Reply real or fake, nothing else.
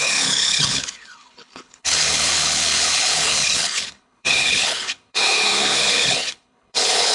fake